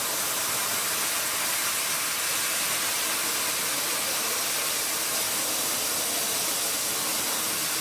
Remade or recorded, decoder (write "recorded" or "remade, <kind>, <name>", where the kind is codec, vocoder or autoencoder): recorded